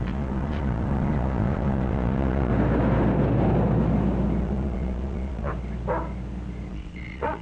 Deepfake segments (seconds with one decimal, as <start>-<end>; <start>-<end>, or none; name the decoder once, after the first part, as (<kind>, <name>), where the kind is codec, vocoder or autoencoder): 0.0-2.5 (vocoder, Vocos); 4.4-5.5; 6.7-7.4